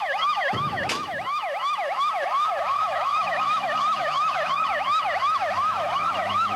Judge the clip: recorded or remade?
remade